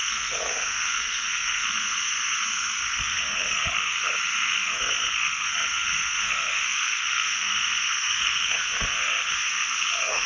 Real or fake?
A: fake